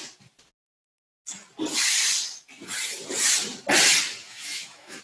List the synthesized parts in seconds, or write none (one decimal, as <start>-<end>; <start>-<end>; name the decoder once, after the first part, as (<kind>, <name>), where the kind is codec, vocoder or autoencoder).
4.2-5.0 (autoencoder, DAC-VAE)